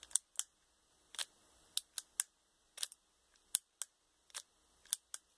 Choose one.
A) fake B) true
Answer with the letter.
B